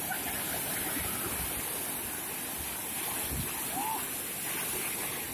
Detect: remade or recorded recorded